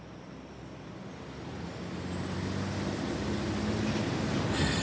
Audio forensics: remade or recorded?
recorded